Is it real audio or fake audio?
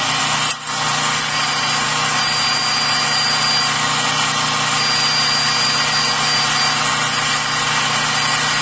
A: real